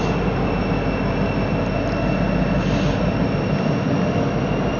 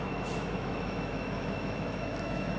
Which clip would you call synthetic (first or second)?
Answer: second